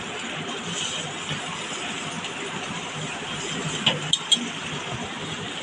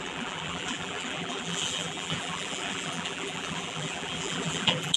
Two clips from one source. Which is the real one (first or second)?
first